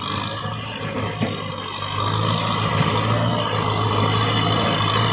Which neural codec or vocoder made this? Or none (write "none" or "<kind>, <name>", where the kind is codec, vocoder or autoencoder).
none